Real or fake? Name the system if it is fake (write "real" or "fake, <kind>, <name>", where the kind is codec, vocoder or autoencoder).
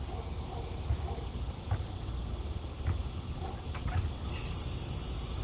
real